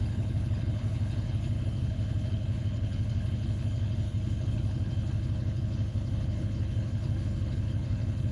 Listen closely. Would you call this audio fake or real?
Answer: fake